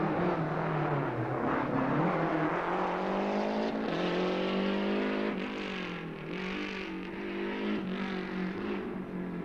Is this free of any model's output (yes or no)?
yes